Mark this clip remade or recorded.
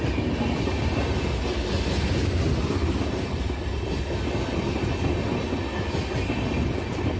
recorded